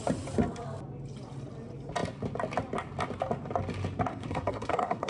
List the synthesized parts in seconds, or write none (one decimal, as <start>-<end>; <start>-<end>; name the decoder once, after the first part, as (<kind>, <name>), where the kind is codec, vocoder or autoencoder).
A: 4.1-5.1 (codec, SNAC)